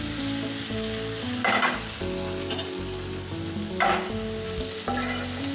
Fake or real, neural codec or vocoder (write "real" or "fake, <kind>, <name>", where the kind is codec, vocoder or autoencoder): real